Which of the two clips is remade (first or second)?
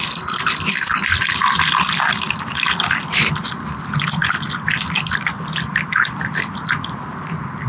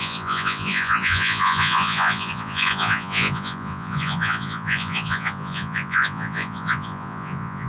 second